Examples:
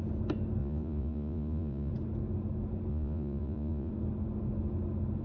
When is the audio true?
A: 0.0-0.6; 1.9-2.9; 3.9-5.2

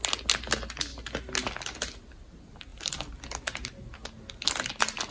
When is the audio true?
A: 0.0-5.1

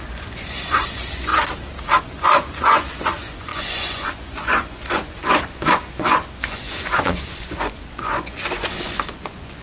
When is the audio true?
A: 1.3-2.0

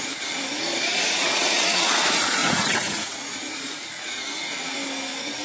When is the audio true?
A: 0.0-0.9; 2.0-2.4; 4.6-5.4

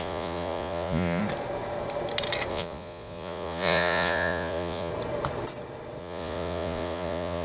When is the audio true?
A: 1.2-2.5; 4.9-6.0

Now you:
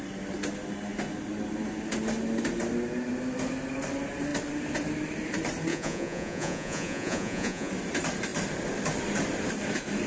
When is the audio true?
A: 0.0-5.7; 7.7-10.1